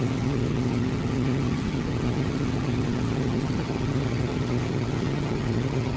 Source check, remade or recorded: remade